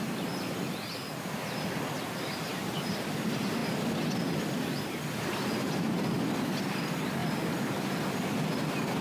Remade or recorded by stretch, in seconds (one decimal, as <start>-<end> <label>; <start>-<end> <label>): 0.0-9.0 recorded

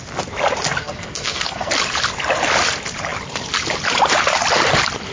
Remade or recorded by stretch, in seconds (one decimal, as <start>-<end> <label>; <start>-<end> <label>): 0.0-0.8 recorded; 0.8-1.7 remade; 1.7-5.1 recorded

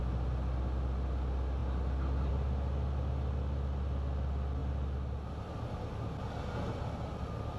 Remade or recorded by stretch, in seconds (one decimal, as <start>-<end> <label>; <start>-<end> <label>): 0.0-7.6 recorded

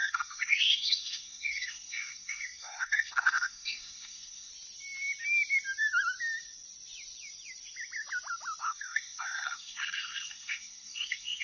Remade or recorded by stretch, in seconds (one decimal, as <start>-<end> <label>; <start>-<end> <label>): 0.0-4.5 remade; 4.5-8.6 recorded; 8.6-11.4 remade

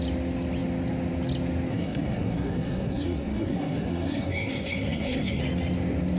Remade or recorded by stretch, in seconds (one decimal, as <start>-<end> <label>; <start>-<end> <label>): 0.0-1.7 recorded; 1.7-5.4 remade; 5.4-6.2 recorded

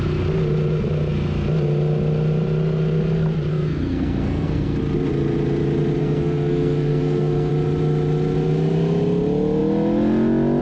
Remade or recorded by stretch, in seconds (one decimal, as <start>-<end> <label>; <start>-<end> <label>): 0.0-3.5 recorded; 3.5-4.8 remade; 4.8-6.0 recorded; 6.0-7.5 remade; 7.5-10.6 recorded

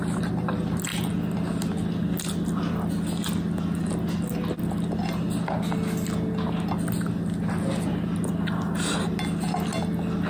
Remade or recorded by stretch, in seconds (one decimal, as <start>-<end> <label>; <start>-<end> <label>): 0.0-10.3 recorded

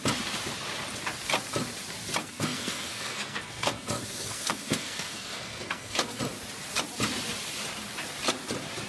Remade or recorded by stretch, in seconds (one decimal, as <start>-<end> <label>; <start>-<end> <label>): 0.0-2.2 recorded; 2.2-6.2 remade; 6.2-8.9 recorded